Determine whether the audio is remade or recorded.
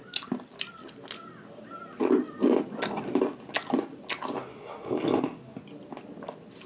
recorded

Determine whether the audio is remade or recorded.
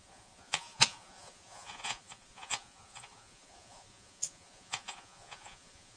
remade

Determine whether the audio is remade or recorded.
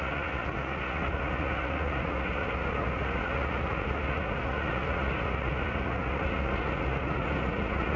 remade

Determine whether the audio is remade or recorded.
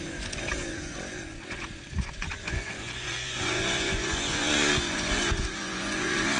remade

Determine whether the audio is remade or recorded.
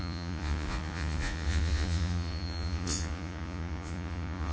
remade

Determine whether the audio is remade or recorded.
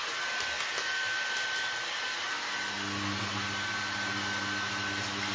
recorded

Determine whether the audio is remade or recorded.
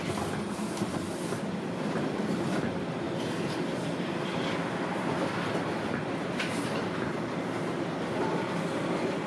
recorded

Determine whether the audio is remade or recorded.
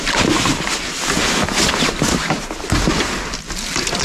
recorded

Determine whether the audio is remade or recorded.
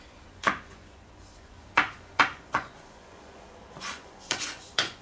remade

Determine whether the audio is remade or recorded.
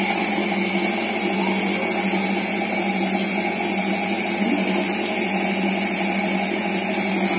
recorded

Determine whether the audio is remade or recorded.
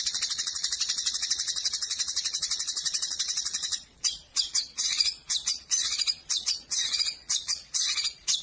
remade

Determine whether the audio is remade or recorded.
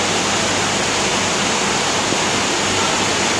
recorded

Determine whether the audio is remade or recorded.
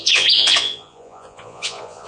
remade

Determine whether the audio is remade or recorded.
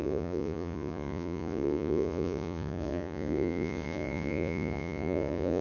remade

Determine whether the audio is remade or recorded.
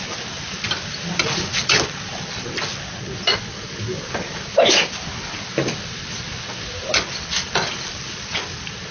recorded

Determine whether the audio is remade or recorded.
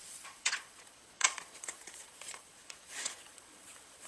remade